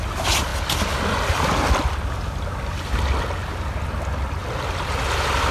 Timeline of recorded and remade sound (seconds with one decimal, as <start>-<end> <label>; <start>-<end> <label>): 0.0-5.5 recorded